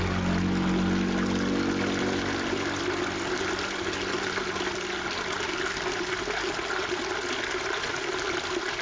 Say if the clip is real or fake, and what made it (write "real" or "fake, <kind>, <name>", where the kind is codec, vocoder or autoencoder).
real